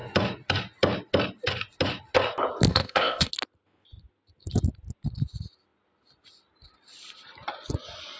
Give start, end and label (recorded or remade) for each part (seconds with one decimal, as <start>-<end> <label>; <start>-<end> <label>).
0.0-2.7 recorded; 2.7-3.3 remade; 3.3-8.2 recorded